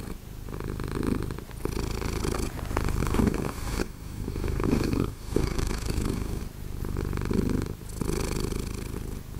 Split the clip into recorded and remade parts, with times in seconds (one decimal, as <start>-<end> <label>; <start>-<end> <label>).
0.0-3.0 recorded; 3.0-6.4 remade; 6.4-9.4 recorded